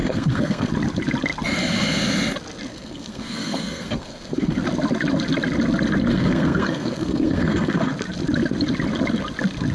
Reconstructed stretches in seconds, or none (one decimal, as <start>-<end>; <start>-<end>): 0.0-0.7; 2.7-4.6; 6.1-7.9

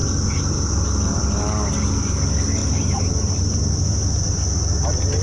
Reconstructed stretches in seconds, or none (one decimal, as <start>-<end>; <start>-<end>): 2.6-4.0

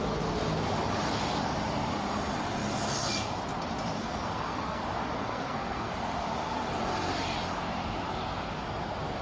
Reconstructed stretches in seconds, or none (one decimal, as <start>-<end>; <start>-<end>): 4.0-4.8; 5.2-5.9

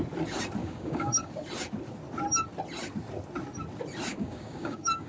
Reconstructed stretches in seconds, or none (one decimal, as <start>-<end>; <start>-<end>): 0.6-1.3; 4.1-5.1

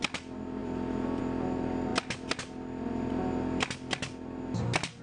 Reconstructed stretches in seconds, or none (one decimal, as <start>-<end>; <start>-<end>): 0.6-1.2

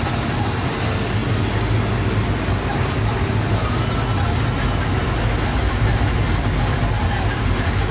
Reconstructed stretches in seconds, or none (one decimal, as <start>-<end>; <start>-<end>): none